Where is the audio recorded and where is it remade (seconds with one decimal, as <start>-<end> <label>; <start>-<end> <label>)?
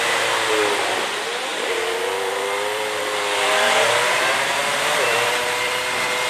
0.0-1.5 recorded; 1.5-5.3 remade; 5.3-6.3 recorded